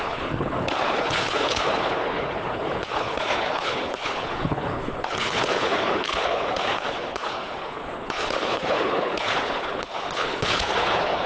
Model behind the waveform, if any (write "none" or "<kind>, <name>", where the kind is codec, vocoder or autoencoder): codec, HILCodec